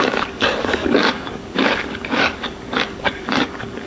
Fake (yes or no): yes